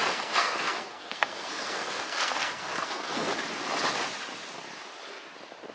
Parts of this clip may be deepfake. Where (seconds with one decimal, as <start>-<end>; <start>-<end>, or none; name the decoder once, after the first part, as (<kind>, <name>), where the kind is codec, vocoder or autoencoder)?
0.0-3.3 (codec, SNAC)